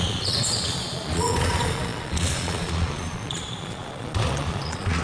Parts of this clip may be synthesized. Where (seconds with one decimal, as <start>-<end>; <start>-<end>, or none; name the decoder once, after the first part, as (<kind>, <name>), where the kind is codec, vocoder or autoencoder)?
0.0-5.0 (vocoder, Vocos)